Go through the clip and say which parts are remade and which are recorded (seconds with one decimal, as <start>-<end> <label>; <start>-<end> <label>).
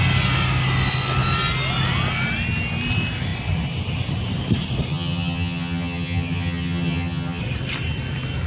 0.0-4.9 recorded; 4.9-7.4 remade; 7.4-8.5 recorded